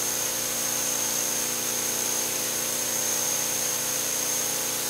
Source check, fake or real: fake